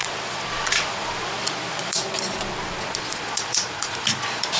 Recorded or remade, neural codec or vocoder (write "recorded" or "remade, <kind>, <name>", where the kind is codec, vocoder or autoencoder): remade, vocoder, Vocos